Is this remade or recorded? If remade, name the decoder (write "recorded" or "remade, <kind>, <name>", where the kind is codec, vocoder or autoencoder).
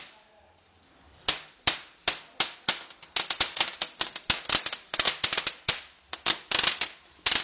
recorded